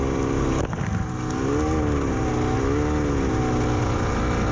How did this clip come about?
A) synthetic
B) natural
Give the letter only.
B